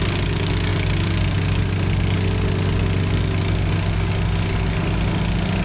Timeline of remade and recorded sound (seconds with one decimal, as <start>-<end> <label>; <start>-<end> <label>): 0.0-5.6 recorded

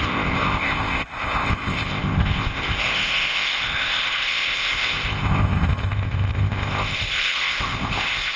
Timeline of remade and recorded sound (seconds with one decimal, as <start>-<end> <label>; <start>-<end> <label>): 0.0-8.4 remade